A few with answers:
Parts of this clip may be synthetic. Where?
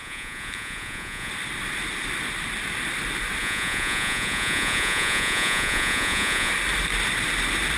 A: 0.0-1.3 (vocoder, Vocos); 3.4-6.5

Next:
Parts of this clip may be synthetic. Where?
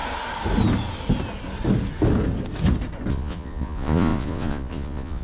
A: 3.1-5.2 (vocoder, Vocos)